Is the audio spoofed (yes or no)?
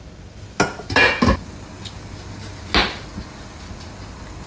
no